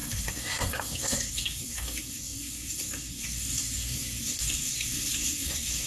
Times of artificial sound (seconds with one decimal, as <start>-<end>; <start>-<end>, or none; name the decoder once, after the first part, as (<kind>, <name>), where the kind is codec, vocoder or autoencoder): 0.0-5.9 (codec, SNAC)